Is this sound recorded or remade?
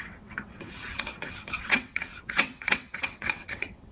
remade